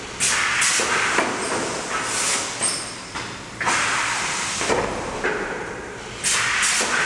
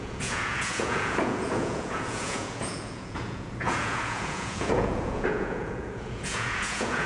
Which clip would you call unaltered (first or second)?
first